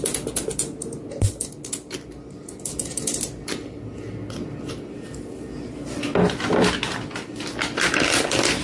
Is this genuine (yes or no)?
yes